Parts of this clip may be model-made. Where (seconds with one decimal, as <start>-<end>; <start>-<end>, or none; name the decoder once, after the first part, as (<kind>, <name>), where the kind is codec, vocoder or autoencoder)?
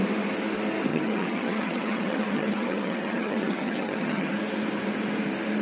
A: 0.9-4.3 (vocoder, HiFi-GAN)